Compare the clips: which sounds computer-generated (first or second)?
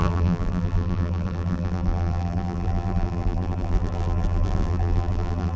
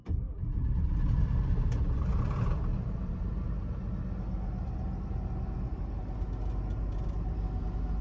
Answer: first